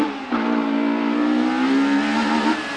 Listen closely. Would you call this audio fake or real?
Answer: real